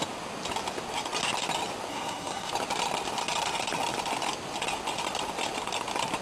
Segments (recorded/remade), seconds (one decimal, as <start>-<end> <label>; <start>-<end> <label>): 0.0-1.9 recorded; 1.9-2.5 remade; 2.5-6.2 recorded